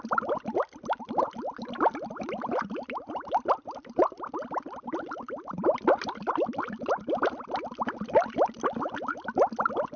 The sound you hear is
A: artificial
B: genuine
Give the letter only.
B